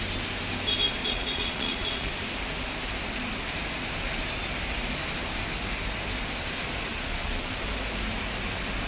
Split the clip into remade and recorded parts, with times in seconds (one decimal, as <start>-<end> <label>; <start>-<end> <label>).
0.0-1.0 recorded; 1.0-2.2 remade; 2.2-6.9 recorded; 6.9-7.5 remade; 7.5-8.9 recorded